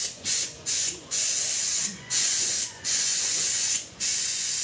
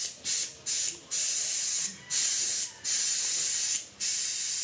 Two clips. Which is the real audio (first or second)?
second